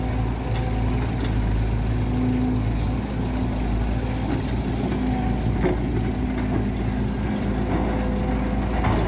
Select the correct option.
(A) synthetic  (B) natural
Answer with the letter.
B